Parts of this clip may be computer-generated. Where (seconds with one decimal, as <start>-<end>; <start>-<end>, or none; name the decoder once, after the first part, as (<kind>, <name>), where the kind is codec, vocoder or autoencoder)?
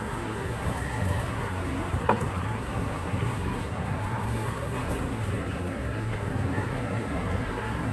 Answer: 0.0-7.9 (codec, SNAC)